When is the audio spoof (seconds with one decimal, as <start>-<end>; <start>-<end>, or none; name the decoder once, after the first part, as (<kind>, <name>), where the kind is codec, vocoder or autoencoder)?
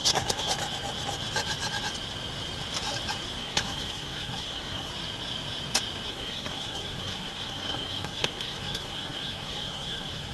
0.0-0.5 (codec, SNAC); 3.4-4.9; 6.1-10.3